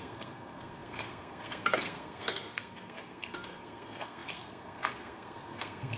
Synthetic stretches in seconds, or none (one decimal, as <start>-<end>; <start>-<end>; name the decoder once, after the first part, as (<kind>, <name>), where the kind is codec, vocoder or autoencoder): 0.0-6.0 (codec, SNAC)